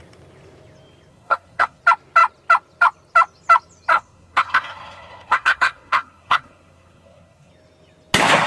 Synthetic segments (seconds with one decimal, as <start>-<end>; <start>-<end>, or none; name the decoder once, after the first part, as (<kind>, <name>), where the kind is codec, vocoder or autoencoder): 1.1-1.8 (codec, SNAC); 3.9-7.5